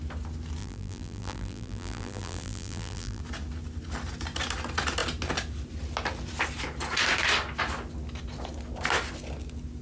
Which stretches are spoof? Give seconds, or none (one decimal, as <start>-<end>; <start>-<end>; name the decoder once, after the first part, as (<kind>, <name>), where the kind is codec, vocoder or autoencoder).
0.6-3.2 (vocoder, BigVGAN v2)